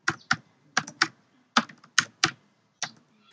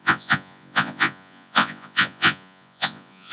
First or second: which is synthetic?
second